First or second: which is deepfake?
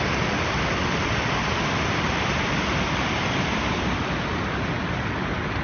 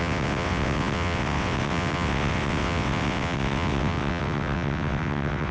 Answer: second